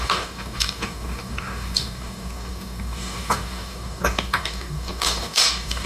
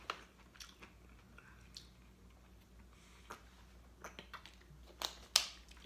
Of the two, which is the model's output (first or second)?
first